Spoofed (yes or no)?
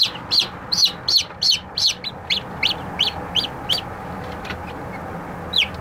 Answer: no